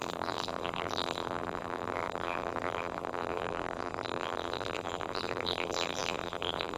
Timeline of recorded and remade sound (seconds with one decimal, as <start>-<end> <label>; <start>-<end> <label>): 0.0-6.8 remade